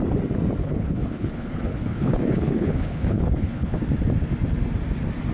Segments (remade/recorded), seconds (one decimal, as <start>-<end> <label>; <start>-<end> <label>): 0.0-0.6 recorded; 0.6-3.8 remade; 3.8-5.3 recorded